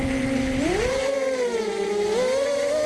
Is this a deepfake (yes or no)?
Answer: yes